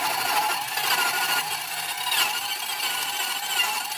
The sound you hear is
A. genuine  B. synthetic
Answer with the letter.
A